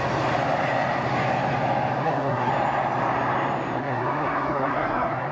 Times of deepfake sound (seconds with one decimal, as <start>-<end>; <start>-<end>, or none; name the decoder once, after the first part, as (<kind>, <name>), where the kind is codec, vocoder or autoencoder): 2.0-2.5 (codec, SNAC); 3.8-5.3